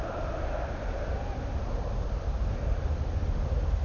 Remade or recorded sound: recorded